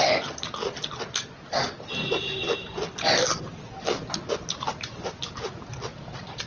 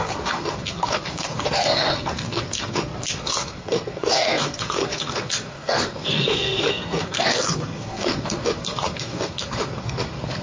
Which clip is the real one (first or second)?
first